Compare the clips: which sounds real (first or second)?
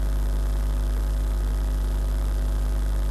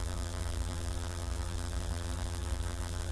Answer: first